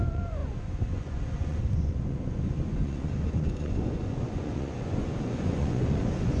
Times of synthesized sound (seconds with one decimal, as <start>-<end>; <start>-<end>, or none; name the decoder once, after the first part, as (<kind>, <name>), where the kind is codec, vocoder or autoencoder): 0.0-6.4 (vocoder, Vocos)